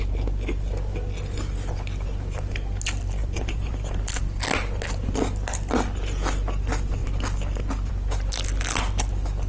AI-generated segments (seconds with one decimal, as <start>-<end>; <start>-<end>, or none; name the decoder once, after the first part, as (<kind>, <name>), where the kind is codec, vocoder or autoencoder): 3.2-4.2 (vocoder, BigVGAN v2)